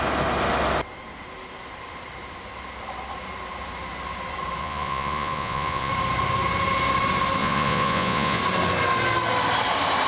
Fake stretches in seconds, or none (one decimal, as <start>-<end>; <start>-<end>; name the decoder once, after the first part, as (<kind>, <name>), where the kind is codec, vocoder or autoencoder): 4.6-5.9 (vocoder, Vocos); 7.4-8.4